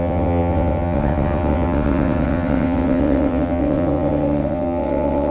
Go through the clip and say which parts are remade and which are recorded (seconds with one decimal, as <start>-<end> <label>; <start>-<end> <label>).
0.0-5.3 remade